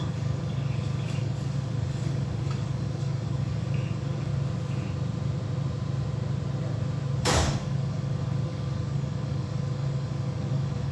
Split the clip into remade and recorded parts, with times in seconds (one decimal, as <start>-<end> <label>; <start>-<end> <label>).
0.0-4.3 remade; 4.3-7.2 recorded; 7.2-10.9 remade